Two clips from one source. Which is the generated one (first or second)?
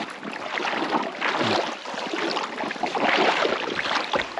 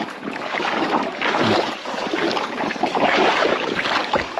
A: second